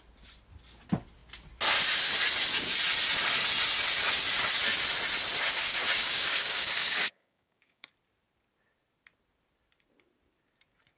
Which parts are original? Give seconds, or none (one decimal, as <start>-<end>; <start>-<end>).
0.0-5.6; 7.9-11.0